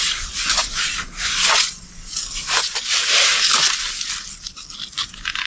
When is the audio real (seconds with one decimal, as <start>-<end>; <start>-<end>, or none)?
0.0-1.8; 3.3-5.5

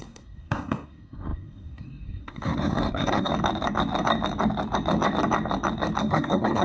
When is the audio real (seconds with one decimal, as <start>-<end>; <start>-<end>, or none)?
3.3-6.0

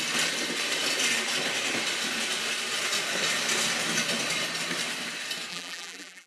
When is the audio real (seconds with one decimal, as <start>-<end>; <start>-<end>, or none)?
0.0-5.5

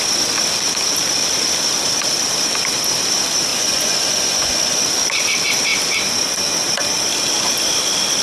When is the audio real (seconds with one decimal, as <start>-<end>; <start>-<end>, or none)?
0.0-3.5; 4.8-8.2

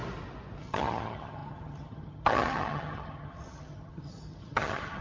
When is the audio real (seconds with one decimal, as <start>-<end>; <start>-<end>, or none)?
0.0-0.6